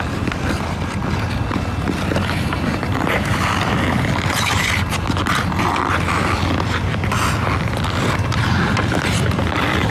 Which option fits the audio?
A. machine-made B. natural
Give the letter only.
B